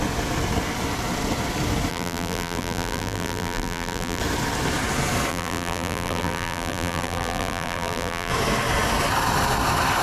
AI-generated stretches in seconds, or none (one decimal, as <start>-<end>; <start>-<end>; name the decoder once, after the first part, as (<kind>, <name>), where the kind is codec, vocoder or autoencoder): 1.9-4.2 (vocoder, BigVGAN v2); 5.3-8.3

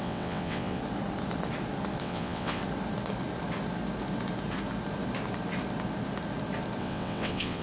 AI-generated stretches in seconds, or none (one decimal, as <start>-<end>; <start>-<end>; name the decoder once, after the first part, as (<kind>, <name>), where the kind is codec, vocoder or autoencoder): 0.0-0.8 (vocoder, WaveNeXt); 2.0-2.6; 6.8-7.6

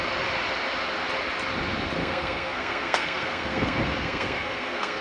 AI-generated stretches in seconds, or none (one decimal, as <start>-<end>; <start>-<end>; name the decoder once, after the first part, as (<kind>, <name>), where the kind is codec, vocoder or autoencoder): 2.0-5.0 (codec, SNAC)

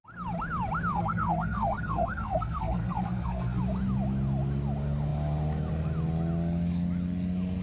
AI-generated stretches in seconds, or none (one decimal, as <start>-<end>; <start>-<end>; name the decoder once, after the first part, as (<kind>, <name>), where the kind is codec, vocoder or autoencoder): 0.9-3.6 (codec, SNAC)

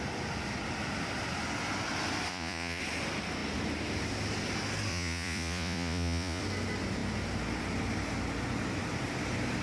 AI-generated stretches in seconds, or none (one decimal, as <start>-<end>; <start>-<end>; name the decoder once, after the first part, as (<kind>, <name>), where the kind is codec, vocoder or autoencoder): 2.3-2.8 (vocoder, Vocos); 4.9-6.4